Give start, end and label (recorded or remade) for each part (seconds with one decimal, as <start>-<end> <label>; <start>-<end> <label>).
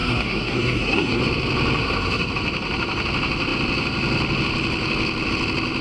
0.0-1.2 remade; 1.2-1.8 recorded; 1.8-2.3 remade; 2.3-5.8 recorded